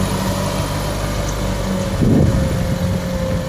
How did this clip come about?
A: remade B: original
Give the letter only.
B